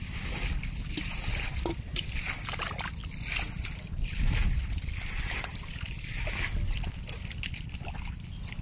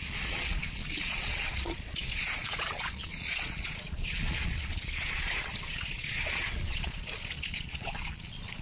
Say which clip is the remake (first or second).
second